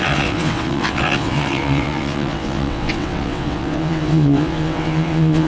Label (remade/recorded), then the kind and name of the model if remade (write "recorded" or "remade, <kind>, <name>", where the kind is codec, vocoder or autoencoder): remade, vocoder, WaveNeXt